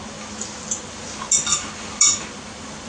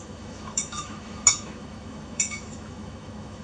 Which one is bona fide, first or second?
first